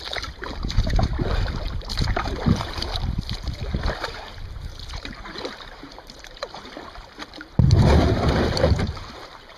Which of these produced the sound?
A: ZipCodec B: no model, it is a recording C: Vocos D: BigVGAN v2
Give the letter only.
D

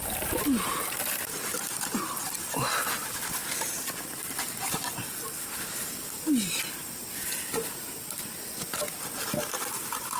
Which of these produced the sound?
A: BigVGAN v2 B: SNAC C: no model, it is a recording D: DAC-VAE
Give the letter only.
C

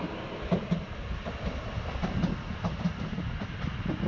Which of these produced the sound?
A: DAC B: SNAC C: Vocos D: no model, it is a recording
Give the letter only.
D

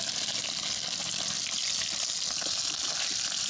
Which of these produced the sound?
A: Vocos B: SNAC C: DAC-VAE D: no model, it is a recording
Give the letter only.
D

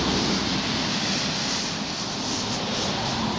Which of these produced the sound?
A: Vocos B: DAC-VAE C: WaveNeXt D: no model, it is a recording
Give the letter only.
D